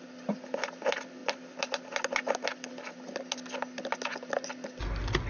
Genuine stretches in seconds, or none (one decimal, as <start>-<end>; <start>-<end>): 0.0-5.3